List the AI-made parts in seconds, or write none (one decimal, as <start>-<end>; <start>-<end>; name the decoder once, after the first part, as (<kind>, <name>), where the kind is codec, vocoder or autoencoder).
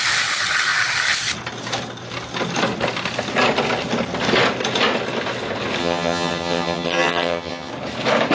5.8-7.7 (vocoder, HiFi-GAN)